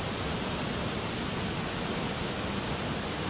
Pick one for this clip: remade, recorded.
recorded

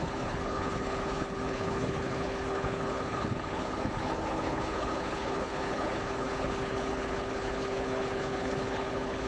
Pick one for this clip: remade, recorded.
remade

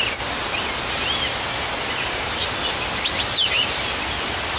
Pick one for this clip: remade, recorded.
recorded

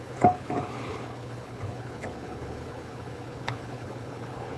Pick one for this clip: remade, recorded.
remade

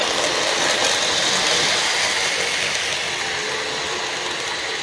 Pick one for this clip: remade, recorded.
recorded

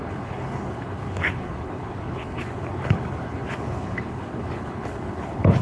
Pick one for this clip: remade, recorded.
remade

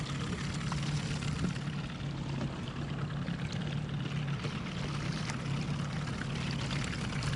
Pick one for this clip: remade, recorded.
recorded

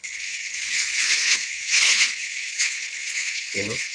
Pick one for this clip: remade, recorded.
remade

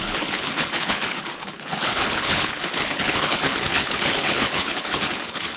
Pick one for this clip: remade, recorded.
remade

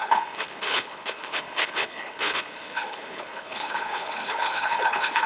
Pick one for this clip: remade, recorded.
remade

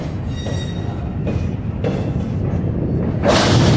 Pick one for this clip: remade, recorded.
recorded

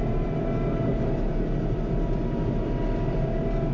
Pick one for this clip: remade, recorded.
recorded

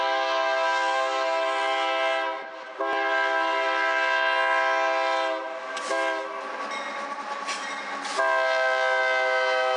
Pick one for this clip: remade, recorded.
recorded